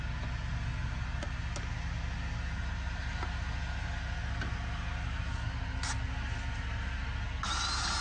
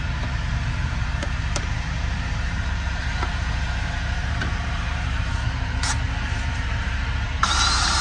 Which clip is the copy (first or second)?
second